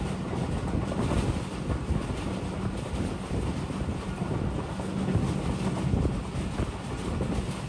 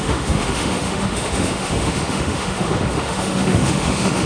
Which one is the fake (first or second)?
second